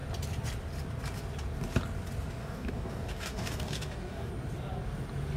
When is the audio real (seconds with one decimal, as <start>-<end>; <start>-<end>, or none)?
0.0-2.4; 4.3-5.4